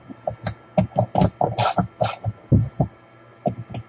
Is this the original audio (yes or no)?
yes